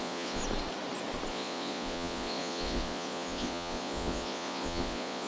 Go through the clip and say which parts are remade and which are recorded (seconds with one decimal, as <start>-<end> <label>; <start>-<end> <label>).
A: 0.0-0.4 remade; 0.4-1.3 recorded; 1.3-5.3 remade

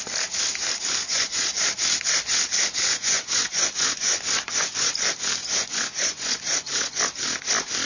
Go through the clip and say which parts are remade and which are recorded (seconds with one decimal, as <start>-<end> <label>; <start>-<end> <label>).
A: 0.0-1.0 recorded; 1.0-1.5 remade; 1.5-2.9 recorded; 2.9-4.9 remade; 4.9-5.4 recorded; 5.4-7.0 remade; 7.0-7.9 recorded

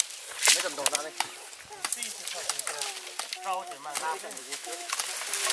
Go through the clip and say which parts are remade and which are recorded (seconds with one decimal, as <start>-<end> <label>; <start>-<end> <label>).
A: 0.0-4.4 recorded; 4.4-4.9 remade; 4.9-5.5 recorded

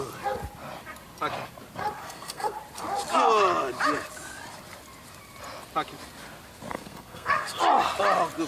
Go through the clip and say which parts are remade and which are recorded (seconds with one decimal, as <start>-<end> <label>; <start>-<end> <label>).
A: 0.0-2.0 recorded; 2.0-2.6 remade; 2.6-6.7 recorded; 6.7-7.6 remade; 7.6-8.5 recorded

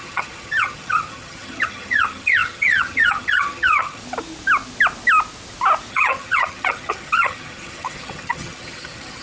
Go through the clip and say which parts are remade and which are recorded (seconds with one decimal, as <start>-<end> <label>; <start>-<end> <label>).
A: 0.0-4.0 remade; 4.0-5.9 recorded; 5.9-9.2 remade

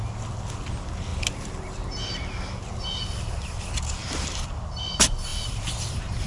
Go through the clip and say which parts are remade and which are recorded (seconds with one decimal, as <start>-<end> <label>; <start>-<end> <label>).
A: 0.0-4.0 recorded; 4.0-4.6 remade; 4.6-5.3 recorded; 5.3-6.3 remade